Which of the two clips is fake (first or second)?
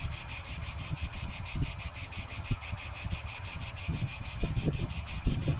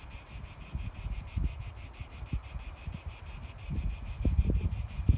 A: first